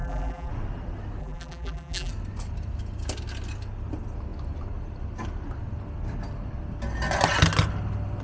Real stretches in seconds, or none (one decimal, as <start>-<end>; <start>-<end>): 0.5-1.2; 2.1-8.2